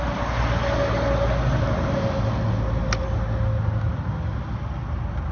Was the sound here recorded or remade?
recorded